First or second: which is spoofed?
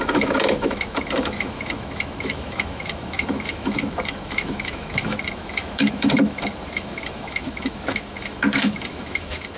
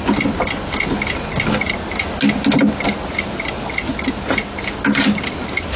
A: first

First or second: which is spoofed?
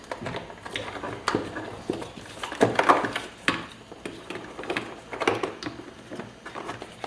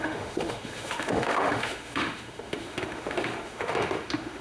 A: second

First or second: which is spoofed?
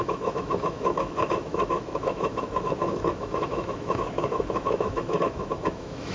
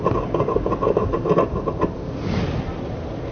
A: first